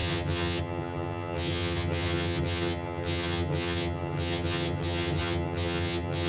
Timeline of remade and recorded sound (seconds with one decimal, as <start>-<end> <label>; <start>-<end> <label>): 0.0-6.3 remade